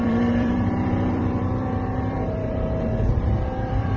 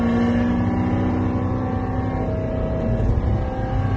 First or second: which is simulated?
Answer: first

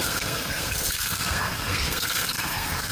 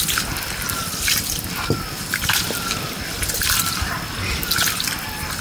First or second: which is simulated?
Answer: first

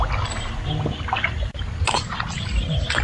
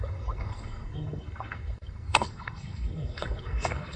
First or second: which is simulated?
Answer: second